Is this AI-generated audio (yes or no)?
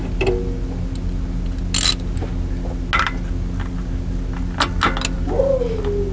no